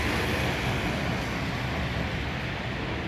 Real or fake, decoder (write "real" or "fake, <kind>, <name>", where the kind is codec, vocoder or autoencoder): real